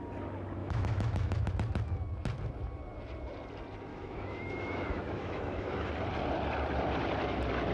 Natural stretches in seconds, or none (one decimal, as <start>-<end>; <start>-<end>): 0.0-0.6; 1.5-3.9; 5.9-7.7